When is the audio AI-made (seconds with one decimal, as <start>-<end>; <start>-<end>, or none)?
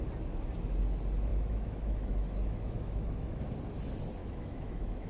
1.3-3.4; 4.2-5.1